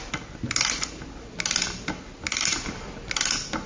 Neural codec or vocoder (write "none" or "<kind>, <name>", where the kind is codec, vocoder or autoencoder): none